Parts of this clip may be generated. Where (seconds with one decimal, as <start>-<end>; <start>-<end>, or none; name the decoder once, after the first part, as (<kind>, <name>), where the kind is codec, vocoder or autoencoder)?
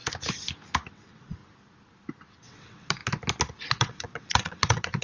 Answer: 0.9-1.4 (vocoder, WaveNeXt); 2.3-3.0; 3.7-5.0